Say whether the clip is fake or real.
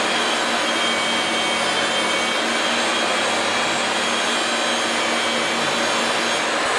real